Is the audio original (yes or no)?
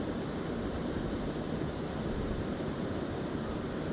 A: no